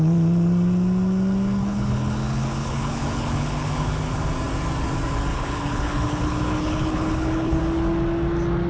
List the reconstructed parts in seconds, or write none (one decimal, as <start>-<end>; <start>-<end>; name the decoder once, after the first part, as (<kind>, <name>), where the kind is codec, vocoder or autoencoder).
1.6-4.0 (codec, HILCodec); 5.3-7.6